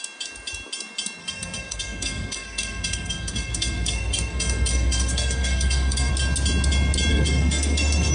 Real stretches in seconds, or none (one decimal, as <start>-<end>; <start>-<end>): 0.0-1.2; 6.1-7.1